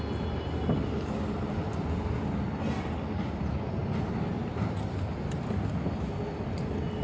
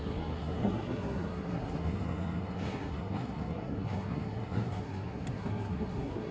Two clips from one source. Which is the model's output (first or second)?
second